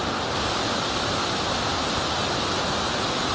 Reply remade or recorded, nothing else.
recorded